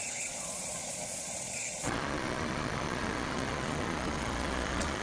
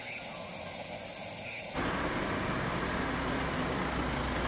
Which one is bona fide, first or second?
second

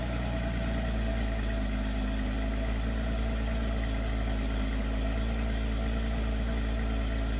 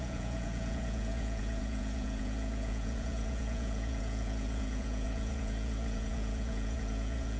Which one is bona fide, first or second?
first